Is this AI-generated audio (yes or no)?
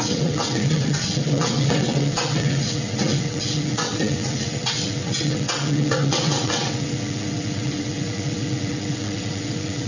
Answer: yes